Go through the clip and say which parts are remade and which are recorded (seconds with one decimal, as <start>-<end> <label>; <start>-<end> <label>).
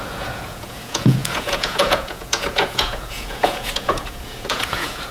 0.0-5.1 remade